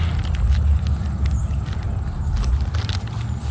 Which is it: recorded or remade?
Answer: recorded